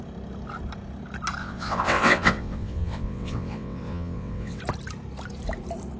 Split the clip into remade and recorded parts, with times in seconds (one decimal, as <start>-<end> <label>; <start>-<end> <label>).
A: 0.0-1.4 recorded; 1.4-4.6 remade; 4.6-6.0 recorded